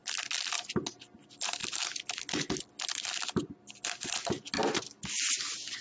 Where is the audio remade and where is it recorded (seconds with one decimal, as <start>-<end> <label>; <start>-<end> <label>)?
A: 0.0-5.8 recorded